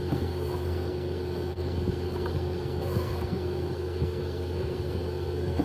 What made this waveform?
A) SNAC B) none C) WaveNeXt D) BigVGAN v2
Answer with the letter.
A